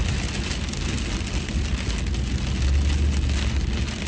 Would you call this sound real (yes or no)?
yes